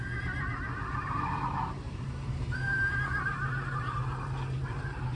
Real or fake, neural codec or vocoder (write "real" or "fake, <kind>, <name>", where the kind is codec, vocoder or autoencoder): fake, vocoder, BigVGAN v2